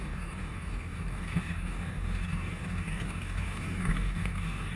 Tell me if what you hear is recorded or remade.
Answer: remade